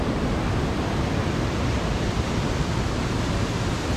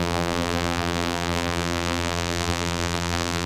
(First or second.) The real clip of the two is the first